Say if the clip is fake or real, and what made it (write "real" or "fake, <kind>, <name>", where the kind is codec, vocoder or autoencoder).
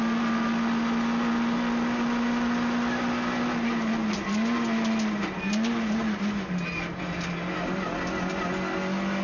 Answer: real